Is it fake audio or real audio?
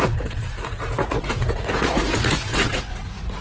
fake